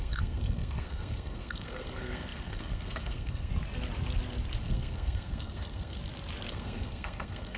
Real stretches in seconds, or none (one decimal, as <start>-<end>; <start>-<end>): 3.5-4.6; 6.0-6.5